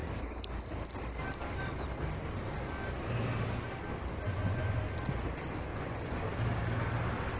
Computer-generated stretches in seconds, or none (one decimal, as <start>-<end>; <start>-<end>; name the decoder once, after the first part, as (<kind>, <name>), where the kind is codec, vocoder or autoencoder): 4.3-4.8 (vocoder, Vocos); 5.7-6.3

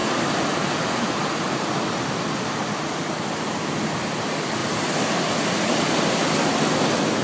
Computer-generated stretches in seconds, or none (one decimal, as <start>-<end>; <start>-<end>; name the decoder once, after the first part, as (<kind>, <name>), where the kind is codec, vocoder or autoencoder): none

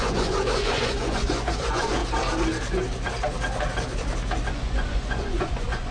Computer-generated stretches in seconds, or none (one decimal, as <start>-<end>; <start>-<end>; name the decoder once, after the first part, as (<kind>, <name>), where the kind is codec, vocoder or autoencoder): 0.0-2.0 (vocoder, Vocos); 4.5-5.9

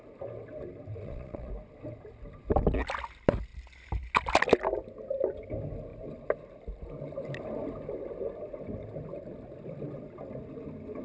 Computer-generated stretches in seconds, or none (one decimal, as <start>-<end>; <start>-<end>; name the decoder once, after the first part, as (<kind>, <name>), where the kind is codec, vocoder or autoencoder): 1.0-1.5 (vocoder, Vocos)

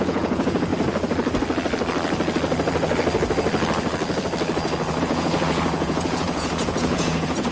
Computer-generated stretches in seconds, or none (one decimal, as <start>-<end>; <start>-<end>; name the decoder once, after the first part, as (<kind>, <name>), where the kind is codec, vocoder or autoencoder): 0.0-0.7 (vocoder, Vocos); 5.0-7.5